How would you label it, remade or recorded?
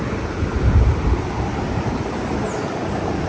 recorded